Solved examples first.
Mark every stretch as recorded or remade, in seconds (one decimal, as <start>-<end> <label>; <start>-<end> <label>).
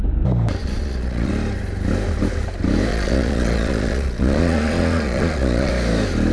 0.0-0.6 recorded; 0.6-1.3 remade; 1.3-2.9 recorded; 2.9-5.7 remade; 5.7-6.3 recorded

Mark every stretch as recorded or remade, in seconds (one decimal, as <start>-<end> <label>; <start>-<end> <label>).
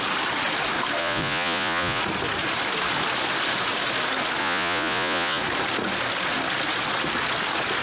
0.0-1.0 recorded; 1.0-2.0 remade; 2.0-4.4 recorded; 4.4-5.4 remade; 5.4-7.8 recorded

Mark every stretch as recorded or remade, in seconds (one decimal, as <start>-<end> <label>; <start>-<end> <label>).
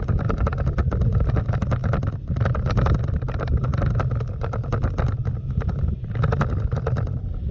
0.0-7.5 recorded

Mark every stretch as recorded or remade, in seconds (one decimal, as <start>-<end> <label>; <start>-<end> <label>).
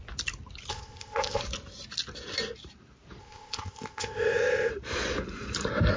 0.0-0.7 recorded; 0.7-1.4 remade; 1.4-3.2 recorded; 3.2-4.7 remade; 4.7-6.0 recorded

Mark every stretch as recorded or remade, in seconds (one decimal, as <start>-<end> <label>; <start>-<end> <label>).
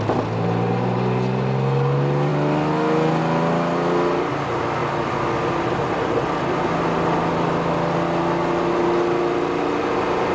0.0-10.3 recorded